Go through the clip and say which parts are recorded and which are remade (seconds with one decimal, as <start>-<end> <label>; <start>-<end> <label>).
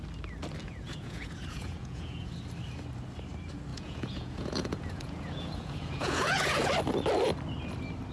0.0-0.6 recorded; 0.6-2.3 remade; 2.3-3.7 recorded; 3.7-6.7 remade; 6.7-8.1 recorded